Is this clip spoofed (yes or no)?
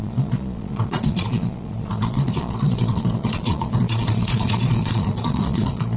yes